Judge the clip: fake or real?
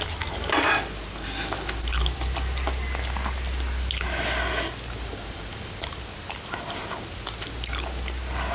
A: real